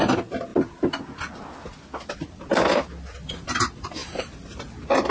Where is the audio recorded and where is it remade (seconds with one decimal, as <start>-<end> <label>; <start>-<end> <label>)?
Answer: 0.0-4.0 recorded; 4.0-5.1 remade